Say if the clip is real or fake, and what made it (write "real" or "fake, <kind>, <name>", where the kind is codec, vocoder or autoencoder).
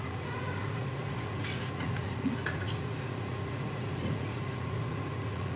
fake, vocoder, Vocos